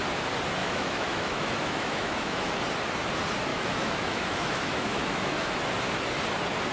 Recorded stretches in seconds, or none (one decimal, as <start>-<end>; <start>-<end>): 0.0-0.6; 2.5-3.5; 5.5-6.7